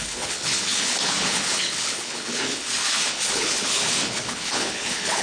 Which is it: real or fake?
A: fake